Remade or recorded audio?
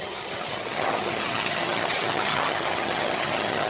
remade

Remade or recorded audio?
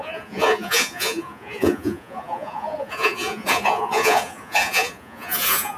remade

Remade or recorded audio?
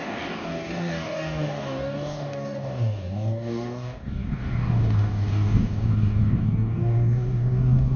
remade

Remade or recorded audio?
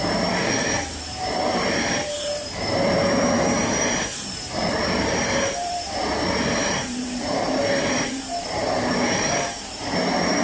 remade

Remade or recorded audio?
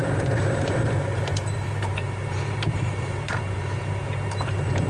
remade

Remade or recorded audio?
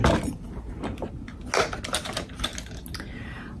recorded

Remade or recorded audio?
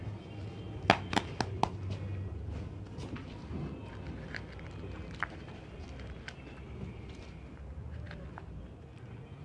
recorded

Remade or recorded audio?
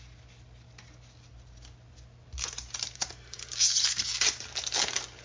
recorded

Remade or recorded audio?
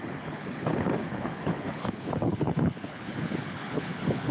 remade